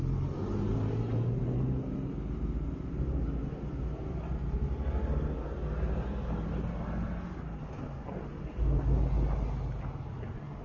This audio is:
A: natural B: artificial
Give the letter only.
A